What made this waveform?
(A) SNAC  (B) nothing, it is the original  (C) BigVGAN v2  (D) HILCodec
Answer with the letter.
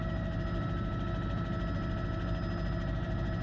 B